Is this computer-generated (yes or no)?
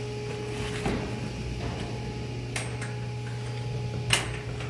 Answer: no